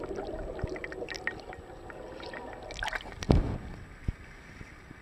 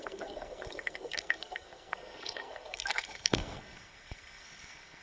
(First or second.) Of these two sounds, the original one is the first